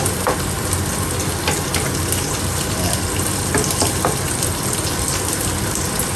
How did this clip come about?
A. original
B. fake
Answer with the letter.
A